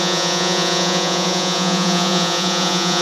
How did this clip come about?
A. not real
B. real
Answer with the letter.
A